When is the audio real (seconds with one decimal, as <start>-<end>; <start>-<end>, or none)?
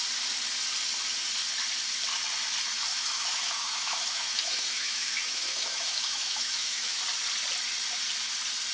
0.0-2.9; 7.0-8.7